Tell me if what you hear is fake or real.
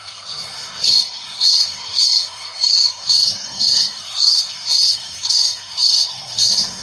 fake